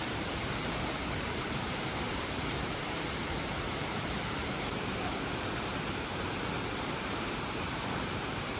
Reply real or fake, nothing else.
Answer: fake